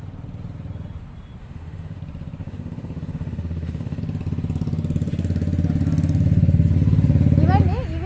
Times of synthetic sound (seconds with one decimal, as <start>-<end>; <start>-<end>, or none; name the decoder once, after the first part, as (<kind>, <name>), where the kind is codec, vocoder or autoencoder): 1.4-2.0 (autoencoder, DAC-VAE); 2.4-4.0